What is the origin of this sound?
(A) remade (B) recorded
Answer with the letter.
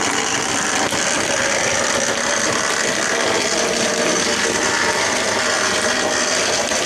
B